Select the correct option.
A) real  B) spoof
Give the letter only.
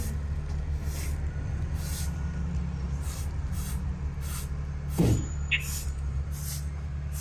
A